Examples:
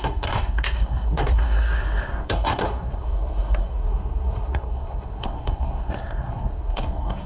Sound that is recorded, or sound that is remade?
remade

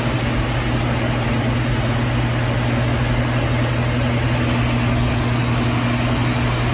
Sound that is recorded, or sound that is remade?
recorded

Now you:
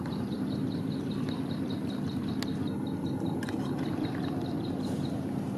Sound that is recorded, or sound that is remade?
recorded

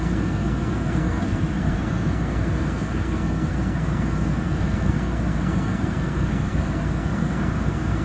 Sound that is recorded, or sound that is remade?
remade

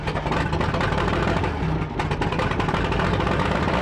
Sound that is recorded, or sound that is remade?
recorded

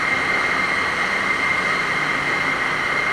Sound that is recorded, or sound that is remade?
recorded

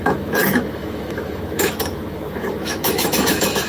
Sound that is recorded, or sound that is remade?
remade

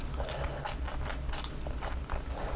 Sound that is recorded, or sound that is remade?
recorded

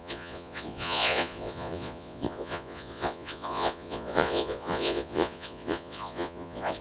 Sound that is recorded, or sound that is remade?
remade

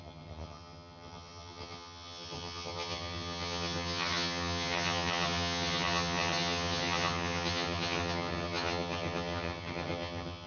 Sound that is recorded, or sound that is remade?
remade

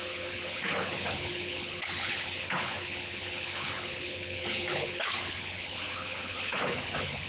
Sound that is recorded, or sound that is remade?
remade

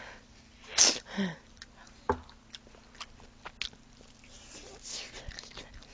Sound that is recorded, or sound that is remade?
recorded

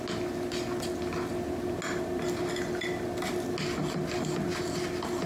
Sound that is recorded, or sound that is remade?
recorded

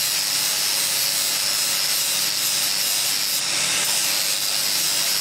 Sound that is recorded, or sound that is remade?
recorded